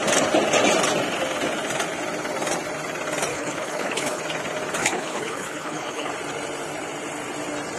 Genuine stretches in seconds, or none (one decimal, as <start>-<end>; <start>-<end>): 0.0-3.3; 4.2-4.8; 6.1-7.8